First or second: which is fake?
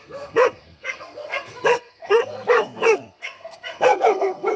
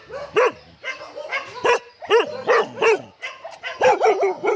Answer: first